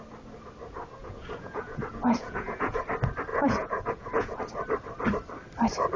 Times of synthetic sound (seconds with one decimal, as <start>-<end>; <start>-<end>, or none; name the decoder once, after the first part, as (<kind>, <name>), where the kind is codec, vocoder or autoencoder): 1.0-2.8 (vocoder, Vocos); 3.3-4.4